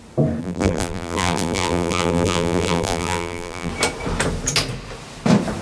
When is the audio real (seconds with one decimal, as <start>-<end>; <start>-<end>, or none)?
0.0-0.4; 3.7-5.6